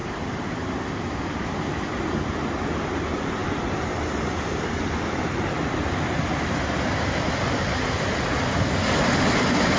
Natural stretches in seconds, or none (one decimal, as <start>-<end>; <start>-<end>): 1.2-9.8